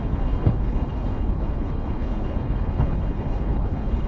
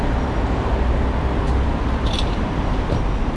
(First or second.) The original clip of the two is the second